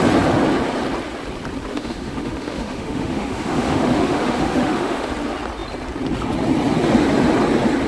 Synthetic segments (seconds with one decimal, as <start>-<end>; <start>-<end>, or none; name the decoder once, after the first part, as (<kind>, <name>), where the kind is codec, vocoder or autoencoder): 1.7-5.1 (autoencoder, DAC-VAE)

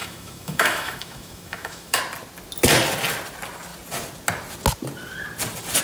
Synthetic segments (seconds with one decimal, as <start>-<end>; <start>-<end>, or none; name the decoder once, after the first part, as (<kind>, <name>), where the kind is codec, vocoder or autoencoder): 0.0-2.0 (autoencoder, DAC-VAE)

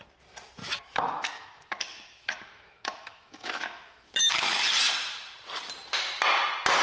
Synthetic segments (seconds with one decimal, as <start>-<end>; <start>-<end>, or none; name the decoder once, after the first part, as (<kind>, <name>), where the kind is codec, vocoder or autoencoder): 0.6-4.7 (autoencoder, DAC-VAE)